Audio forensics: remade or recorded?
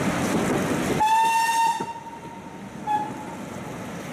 recorded